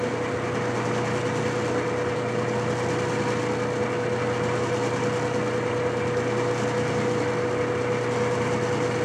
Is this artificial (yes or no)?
no